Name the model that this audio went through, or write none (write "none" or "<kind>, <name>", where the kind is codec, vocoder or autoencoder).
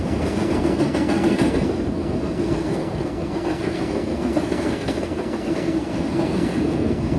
codec, SNAC